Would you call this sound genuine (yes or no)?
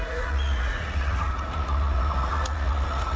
no